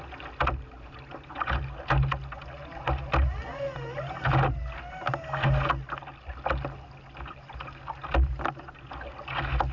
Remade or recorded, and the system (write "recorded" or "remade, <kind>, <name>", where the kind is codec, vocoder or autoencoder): recorded